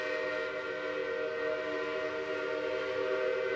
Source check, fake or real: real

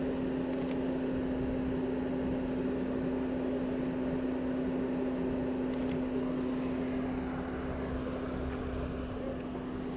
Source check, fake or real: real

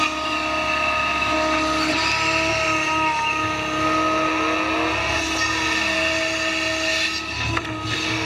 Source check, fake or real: real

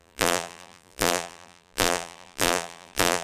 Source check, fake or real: fake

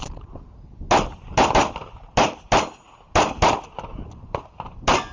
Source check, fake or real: real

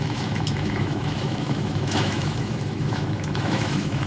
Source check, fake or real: fake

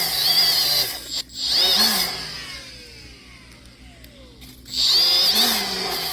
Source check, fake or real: real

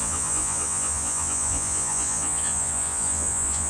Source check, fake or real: fake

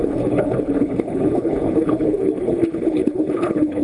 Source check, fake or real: fake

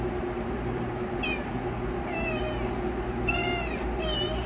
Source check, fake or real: real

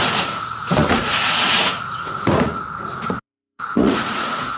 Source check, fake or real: fake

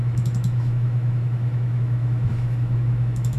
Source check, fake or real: fake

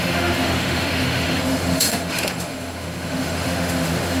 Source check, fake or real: fake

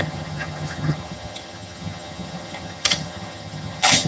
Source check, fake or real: fake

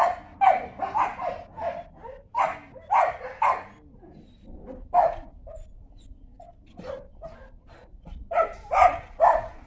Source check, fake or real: real